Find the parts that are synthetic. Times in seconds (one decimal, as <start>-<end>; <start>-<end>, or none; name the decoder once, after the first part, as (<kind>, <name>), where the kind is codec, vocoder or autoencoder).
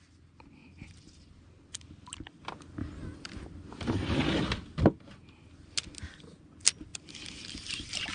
none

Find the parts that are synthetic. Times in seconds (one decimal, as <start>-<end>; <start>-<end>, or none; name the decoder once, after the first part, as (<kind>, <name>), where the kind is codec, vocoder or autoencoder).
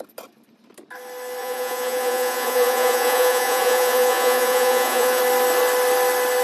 1.4-5.2 (vocoder, Vocos)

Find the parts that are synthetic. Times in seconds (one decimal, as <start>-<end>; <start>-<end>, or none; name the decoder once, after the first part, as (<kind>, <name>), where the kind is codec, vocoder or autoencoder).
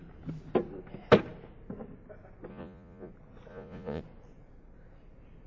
2.5-3.1 (vocoder, Vocos); 3.5-4.0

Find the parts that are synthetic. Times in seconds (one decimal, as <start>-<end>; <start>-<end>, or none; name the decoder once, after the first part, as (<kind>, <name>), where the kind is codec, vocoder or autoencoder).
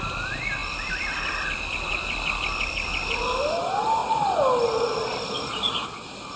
none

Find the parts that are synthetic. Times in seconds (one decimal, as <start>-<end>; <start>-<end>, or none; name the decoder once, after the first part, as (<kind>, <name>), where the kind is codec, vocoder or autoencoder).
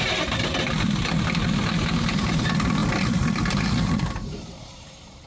2.8-5.3 (vocoder, BigVGAN v2)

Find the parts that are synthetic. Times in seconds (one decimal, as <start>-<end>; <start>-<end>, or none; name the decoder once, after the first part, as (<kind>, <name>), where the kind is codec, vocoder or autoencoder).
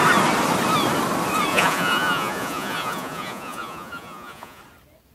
1.5-4.6 (vocoder, Vocos)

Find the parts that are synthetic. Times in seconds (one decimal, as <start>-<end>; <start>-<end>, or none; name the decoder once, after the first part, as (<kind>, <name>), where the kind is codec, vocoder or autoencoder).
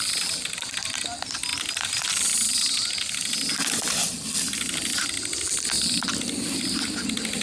1.5-2.5 (vocoder, BigVGAN v2)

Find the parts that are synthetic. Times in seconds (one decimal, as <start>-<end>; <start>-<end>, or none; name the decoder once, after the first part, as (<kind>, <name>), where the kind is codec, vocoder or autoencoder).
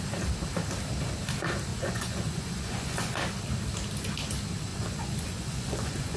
1.7-3.1 (vocoder, Vocos); 4.7-6.2